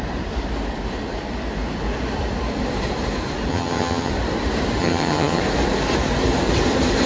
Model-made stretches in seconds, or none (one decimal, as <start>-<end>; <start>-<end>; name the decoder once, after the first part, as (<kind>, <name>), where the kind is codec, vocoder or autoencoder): 3.5-4.1 (vocoder, HiFi-GAN); 4.8-5.4